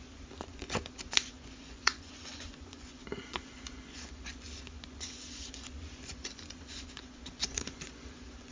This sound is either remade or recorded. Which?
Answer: remade